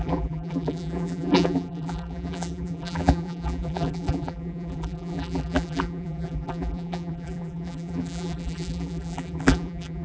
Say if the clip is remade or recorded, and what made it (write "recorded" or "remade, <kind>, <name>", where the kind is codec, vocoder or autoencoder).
remade, vocoder, BigVGAN v2